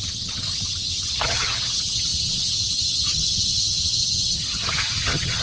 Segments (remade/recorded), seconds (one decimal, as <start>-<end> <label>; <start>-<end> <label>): 0.0-5.4 remade